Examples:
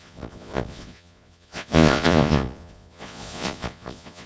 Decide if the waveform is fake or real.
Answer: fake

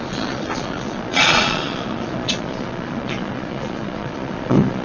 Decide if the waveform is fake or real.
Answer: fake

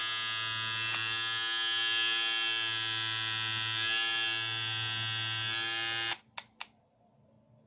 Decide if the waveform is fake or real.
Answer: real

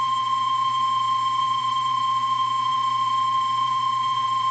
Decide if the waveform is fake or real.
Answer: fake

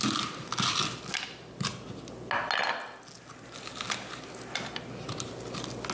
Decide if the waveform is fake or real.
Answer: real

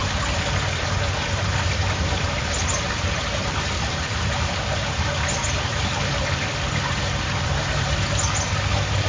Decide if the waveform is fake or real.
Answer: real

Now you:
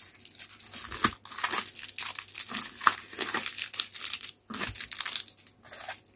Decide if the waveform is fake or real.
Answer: real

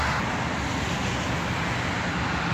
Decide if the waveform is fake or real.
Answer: real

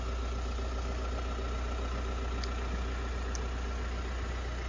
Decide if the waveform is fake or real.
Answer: real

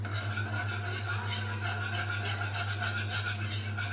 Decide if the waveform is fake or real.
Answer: real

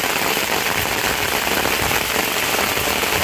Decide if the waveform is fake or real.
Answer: real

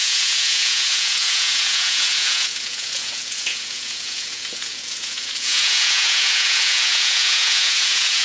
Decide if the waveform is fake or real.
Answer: fake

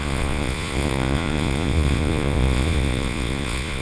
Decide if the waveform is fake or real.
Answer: fake